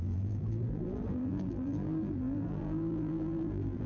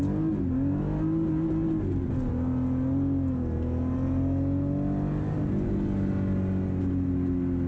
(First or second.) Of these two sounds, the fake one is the first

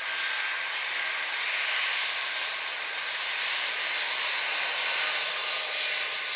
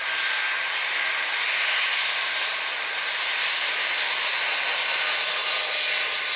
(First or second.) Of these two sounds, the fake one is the first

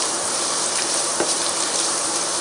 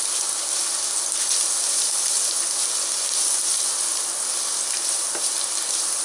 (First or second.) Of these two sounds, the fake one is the first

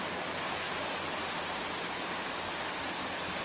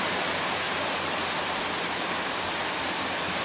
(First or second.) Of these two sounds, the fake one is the second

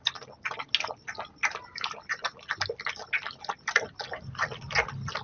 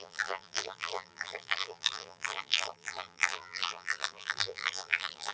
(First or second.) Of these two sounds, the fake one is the second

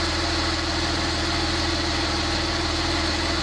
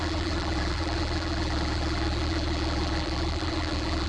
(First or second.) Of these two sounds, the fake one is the second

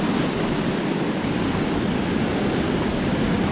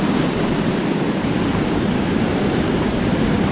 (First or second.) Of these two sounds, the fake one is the second